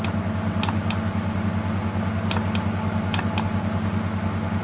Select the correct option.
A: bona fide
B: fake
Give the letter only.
A